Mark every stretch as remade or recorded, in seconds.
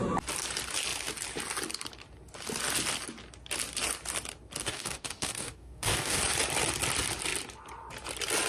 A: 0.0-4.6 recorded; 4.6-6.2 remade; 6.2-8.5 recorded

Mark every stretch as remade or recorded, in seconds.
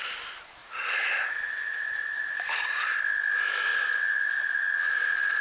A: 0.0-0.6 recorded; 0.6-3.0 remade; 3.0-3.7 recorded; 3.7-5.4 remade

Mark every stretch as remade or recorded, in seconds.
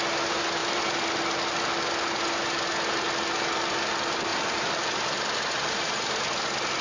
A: 0.0-0.6 recorded; 0.6-1.2 remade; 1.2-4.3 recorded; 4.3-6.1 remade; 6.1-6.8 recorded